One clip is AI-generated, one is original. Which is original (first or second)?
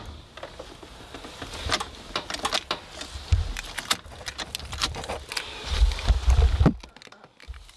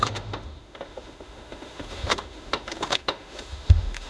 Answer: first